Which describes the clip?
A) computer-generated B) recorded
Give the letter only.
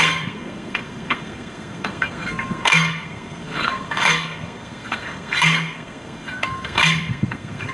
A